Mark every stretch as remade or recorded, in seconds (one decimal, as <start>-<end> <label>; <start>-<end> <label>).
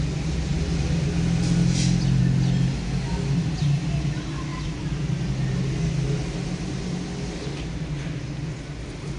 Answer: 0.0-9.2 recorded